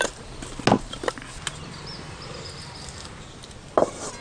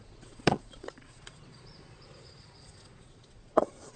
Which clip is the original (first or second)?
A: first